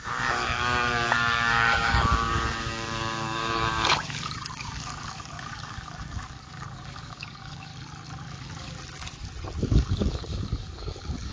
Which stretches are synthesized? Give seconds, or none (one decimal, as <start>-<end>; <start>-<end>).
0.0-7.7; 9.6-11.3